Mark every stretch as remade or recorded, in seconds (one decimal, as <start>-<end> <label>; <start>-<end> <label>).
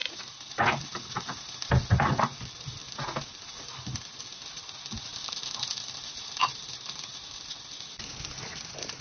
0.0-0.5 recorded; 0.5-2.8 remade; 2.8-6.2 recorded; 6.2-9.0 remade